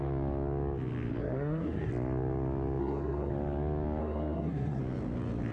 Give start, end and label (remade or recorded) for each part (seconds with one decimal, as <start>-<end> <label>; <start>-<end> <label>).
0.0-1.2 recorded; 1.2-1.9 remade; 1.9-2.8 recorded; 2.8-3.3 remade; 3.3-4.0 recorded; 4.0-4.8 remade; 4.8-5.5 recorded